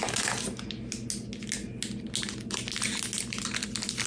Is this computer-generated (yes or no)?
no